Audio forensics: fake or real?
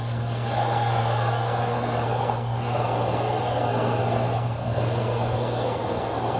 fake